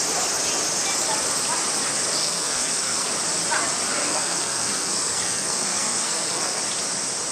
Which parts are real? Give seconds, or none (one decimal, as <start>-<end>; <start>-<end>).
0.0-2.2; 3.1-4.0; 6.6-7.3